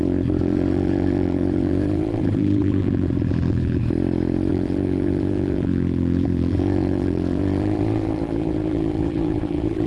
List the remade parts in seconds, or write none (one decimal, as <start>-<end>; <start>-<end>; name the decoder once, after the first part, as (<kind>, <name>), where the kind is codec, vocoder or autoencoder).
0.0-3.8 (vocoder, BigVGAN v2); 4.5-9.9